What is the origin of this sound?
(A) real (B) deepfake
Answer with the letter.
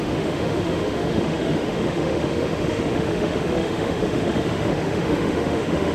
B